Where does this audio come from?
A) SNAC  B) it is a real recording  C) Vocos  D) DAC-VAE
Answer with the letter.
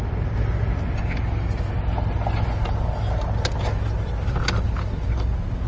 B